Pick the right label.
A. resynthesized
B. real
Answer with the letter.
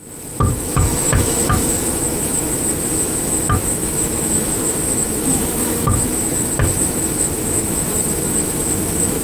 A